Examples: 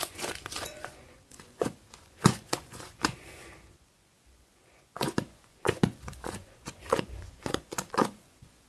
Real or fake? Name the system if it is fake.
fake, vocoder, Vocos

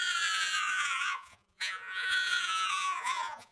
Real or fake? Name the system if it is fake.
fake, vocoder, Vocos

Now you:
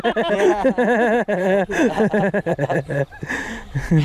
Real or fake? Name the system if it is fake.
real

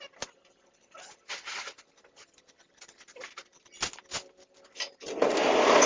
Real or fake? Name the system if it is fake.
real